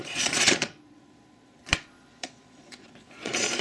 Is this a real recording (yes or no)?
no